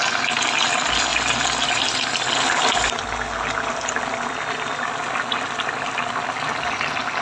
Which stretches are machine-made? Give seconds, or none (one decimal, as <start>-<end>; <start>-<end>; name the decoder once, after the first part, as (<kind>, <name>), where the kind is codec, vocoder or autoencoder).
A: none